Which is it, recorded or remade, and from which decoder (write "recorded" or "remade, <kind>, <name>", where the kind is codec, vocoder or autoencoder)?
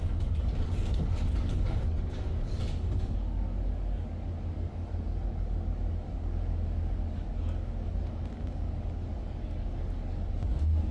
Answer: remade, codec, DAC